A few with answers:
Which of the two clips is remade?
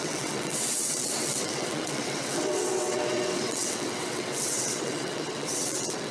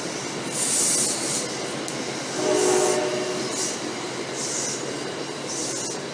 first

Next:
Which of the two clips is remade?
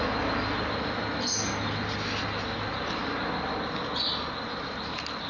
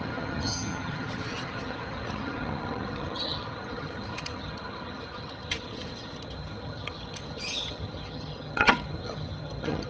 second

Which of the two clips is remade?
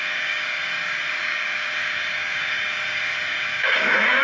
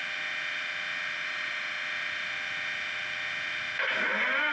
first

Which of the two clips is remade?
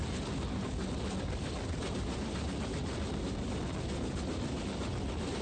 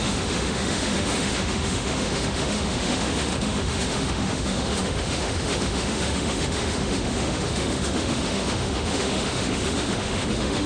second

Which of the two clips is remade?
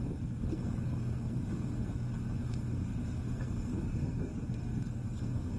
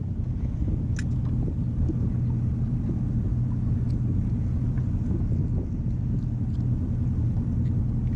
first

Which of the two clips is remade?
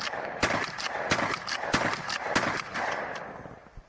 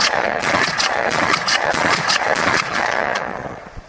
second